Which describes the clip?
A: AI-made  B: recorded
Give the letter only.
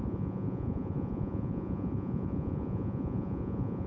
A